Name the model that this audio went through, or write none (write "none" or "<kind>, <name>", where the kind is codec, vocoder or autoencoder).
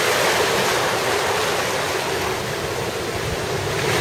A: none